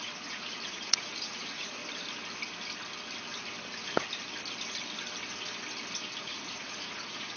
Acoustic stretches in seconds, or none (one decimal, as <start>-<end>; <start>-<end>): 1.8-6.2